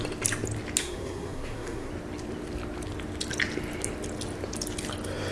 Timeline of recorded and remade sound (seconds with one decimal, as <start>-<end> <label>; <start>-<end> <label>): 0.0-0.8 recorded; 0.8-1.9 remade; 1.9-5.3 recorded